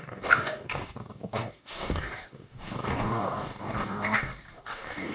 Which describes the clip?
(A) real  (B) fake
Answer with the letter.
B